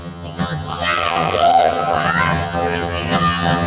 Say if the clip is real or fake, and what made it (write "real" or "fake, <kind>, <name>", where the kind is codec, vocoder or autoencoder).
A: fake, vocoder, HiFi-GAN